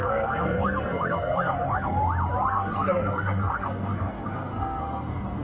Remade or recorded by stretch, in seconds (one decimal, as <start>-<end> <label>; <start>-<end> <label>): 0.0-2.0 remade; 2.0-2.5 recorded; 2.5-5.4 remade